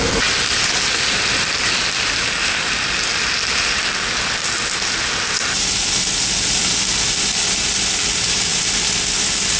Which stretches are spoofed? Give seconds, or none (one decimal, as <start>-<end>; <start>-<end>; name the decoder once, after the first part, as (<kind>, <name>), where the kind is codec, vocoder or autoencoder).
none